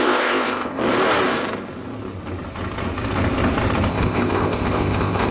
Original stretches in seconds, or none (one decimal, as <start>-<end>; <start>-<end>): 0.8-3.9

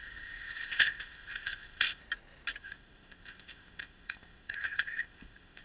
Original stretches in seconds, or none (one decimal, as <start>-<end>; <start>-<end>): 2.0-2.6

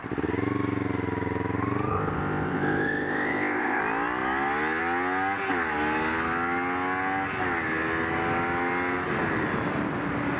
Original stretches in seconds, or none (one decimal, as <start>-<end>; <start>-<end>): 0.0-1.9; 3.8-10.4

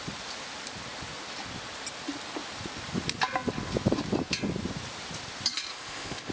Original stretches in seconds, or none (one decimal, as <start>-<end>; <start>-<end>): 0.0-5.7

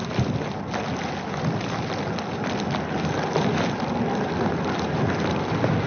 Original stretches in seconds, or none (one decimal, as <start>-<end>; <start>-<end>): 0.0-5.9

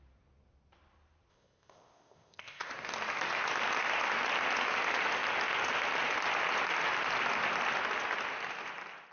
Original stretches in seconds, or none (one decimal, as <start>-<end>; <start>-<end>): 0.0-1.3; 2.7-9.1

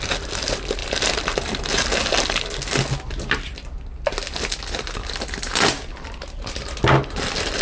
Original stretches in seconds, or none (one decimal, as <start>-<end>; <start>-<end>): 0.0-7.6